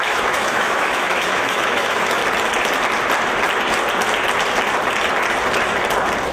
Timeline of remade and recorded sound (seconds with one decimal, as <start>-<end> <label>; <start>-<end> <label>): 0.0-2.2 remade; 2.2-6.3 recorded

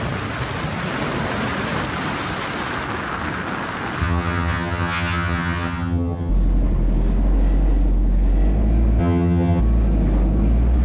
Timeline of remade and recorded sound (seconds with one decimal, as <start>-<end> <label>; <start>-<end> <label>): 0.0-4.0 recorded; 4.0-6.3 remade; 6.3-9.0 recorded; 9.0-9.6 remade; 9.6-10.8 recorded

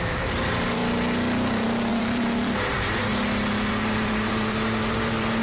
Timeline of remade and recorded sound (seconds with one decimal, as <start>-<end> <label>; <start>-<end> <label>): 0.0-0.8 remade; 0.8-1.5 recorded; 1.5-3.1 remade; 3.1-3.7 recorded; 3.7-5.4 remade